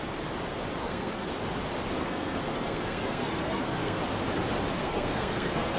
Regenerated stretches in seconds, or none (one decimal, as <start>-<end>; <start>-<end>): 0.8-1.3; 2.0-4.0; 4.8-5.8